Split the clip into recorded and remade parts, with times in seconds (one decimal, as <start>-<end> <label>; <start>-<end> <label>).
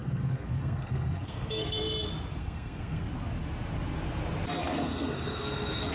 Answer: 0.0-1.8 remade; 1.8-2.4 recorded; 2.4-3.0 remade; 3.0-4.6 recorded; 4.6-5.9 remade